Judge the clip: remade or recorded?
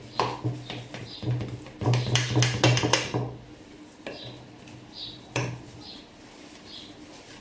recorded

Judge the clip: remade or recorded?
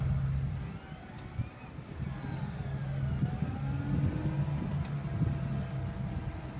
recorded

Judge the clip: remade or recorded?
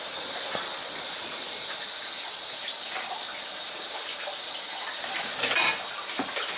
recorded